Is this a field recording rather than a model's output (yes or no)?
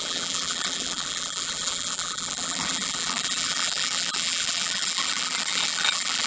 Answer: no